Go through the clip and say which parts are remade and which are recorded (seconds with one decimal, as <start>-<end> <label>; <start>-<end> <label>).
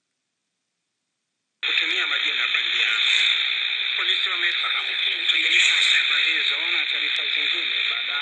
0.0-4.6 recorded; 4.6-5.7 remade; 5.7-8.2 recorded